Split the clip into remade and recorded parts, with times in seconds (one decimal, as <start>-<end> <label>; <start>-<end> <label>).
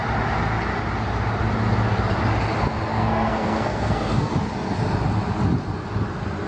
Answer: 0.0-2.9 recorded; 2.9-4.3 remade; 4.3-6.5 recorded